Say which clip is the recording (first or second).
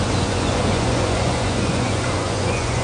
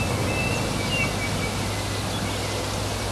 second